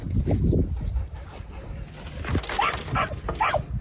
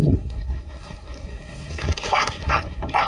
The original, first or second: first